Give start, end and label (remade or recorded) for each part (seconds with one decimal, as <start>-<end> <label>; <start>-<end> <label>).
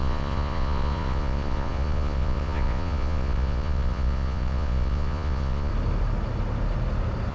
0.0-5.7 remade; 5.7-7.3 recorded